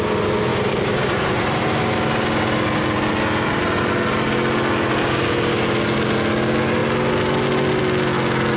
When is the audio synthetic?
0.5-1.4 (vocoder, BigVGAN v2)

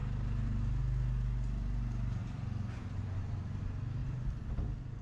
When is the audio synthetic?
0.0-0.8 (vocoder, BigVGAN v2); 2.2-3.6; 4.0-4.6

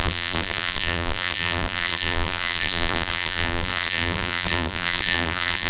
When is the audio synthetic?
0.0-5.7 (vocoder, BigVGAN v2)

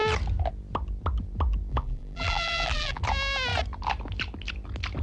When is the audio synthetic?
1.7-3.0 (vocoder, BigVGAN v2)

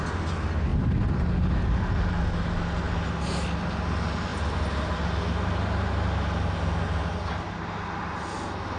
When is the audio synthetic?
4.3-4.9 (vocoder, BigVGAN v2)

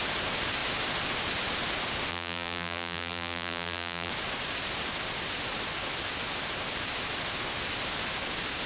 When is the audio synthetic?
2.1-4.1 (vocoder, BigVGAN v2)